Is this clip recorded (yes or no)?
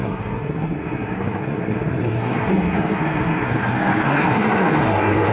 no